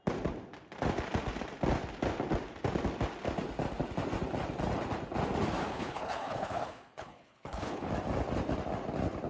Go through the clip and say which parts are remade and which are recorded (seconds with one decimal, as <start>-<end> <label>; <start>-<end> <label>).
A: 0.0-5.7 recorded; 5.7-7.9 remade; 7.9-9.3 recorded